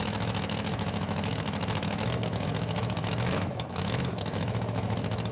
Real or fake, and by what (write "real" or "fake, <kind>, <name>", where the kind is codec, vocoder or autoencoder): fake, autoencoder, DAC-VAE